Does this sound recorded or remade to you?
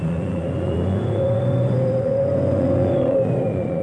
remade